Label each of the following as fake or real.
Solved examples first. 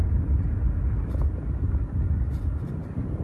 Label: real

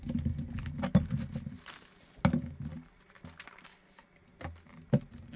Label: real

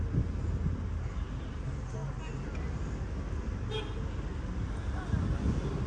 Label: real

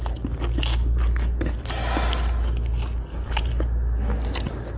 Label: real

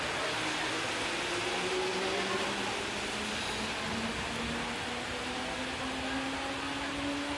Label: real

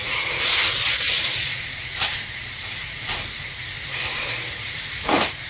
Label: fake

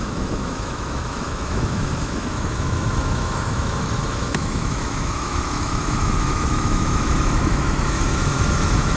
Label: fake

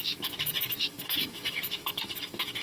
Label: fake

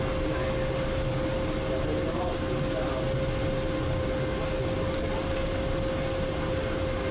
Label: real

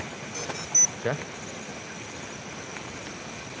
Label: real